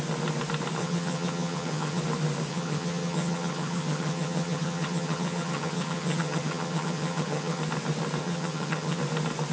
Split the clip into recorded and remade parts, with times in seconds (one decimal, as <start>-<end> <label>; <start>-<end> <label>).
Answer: 0.0-0.8 recorded; 0.8-2.0 remade; 2.0-2.5 recorded; 2.5-7.6 remade; 7.6-8.2 recorded; 8.2-9.0 remade; 9.0-9.5 recorded